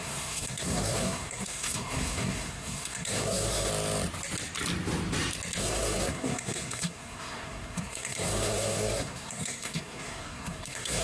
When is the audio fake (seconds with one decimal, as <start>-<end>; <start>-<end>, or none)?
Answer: 0.0-3.7; 5.6-11.0